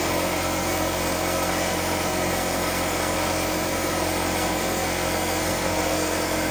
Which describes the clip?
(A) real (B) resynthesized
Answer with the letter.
B